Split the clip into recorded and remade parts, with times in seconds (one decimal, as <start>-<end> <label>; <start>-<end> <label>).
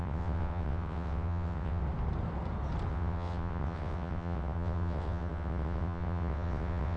0.0-1.8 remade; 1.8-2.9 recorded; 2.9-7.0 remade